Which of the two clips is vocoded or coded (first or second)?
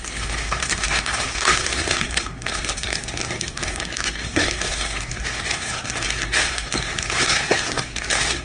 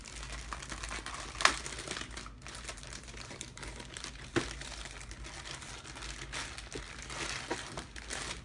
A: first